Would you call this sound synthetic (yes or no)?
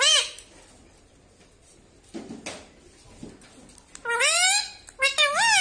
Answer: no